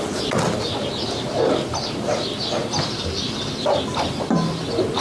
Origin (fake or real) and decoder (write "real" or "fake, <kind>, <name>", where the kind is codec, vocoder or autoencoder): real